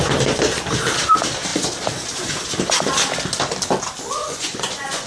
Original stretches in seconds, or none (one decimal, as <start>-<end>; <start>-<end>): 0.0-4.2